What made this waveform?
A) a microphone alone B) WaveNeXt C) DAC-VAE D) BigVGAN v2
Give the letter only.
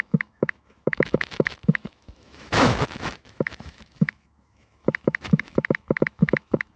C